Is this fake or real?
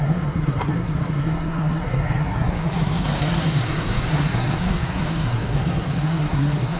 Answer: fake